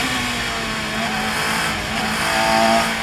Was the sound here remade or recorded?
recorded